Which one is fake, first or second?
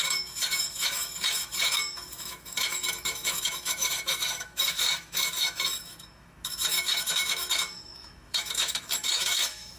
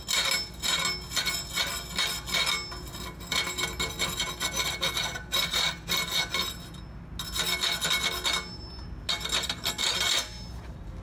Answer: first